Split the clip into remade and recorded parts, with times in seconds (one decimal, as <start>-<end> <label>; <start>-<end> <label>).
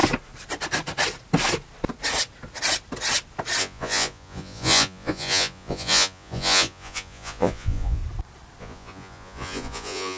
0.0-3.6 recorded; 3.6-8.0 remade; 8.0-8.6 recorded; 8.6-10.2 remade